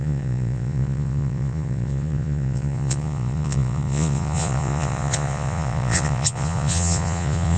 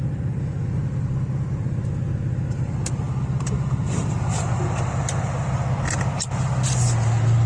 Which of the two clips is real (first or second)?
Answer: second